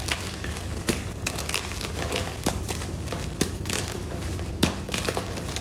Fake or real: fake